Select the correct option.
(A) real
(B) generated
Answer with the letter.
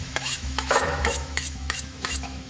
B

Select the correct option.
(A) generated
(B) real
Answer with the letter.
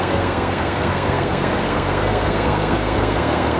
A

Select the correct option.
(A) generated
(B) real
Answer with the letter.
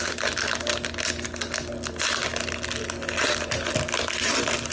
B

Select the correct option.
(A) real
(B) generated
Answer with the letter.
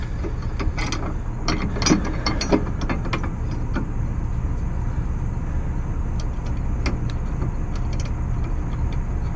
A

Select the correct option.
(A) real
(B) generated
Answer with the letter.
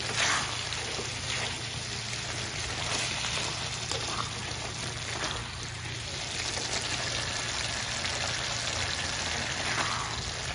A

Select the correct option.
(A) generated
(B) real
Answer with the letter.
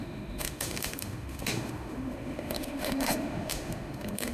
A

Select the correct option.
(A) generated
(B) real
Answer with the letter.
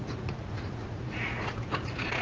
A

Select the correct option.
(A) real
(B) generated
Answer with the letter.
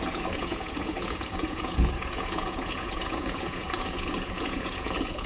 B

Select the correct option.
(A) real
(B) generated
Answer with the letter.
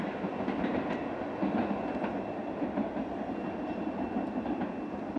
A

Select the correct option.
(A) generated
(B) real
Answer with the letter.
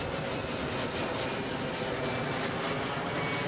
B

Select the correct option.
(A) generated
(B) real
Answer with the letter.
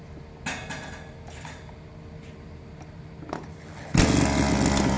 B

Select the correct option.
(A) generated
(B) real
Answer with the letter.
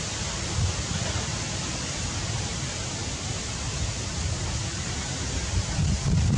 B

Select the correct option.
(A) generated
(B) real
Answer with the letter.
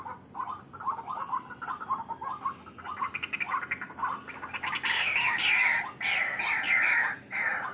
B